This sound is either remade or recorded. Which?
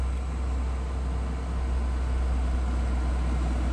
recorded